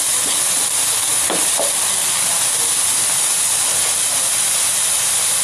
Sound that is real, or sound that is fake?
real